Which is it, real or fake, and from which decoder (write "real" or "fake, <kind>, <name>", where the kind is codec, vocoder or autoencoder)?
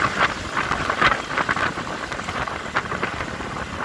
real